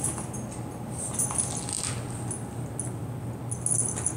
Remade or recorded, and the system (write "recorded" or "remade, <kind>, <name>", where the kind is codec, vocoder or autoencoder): recorded